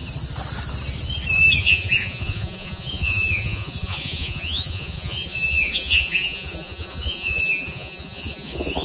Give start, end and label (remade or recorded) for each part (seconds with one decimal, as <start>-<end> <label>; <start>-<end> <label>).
0.0-1.6 recorded; 1.6-8.8 remade